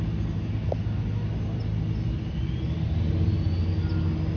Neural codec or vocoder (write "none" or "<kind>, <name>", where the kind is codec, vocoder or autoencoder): none